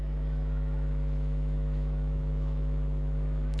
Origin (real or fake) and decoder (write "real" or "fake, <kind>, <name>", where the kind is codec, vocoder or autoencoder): fake, autoencoder, DAC-VAE